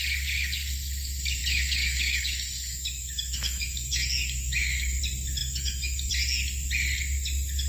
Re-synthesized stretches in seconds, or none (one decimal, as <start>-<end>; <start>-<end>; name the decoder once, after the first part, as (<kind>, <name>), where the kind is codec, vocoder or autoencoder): 1.4-5.0 (autoencoder, DAC-VAE); 5.4-6.1